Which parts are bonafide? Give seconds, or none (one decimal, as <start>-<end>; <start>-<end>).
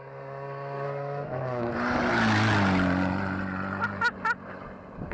1.7-5.1